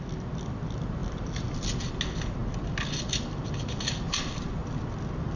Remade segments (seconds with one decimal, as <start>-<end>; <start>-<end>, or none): none